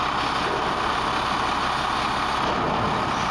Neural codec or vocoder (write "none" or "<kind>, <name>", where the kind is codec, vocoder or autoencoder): none